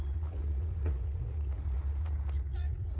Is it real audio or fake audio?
fake